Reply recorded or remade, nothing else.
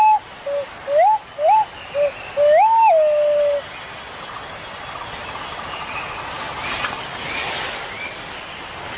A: recorded